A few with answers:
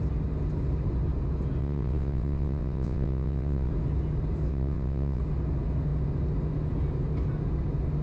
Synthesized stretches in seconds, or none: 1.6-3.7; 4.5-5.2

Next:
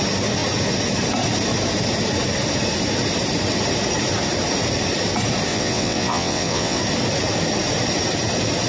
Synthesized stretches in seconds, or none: 5.5-6.8

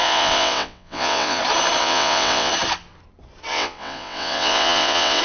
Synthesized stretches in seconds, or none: 0.0-1.4; 1.8-2.5; 3.5-5.2